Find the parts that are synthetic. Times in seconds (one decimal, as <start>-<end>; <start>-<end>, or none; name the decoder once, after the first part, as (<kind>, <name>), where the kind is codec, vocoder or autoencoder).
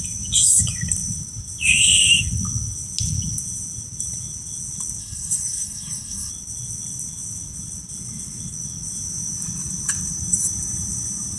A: 5.0-6.3 (codec, SNAC)